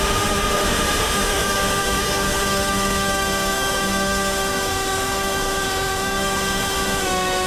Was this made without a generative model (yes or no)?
no